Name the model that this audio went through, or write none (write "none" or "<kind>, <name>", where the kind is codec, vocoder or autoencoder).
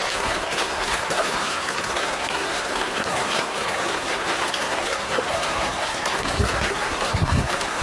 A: codec, SNAC